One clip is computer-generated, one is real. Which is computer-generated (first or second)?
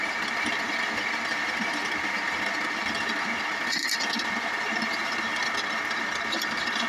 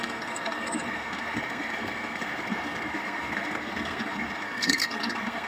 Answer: second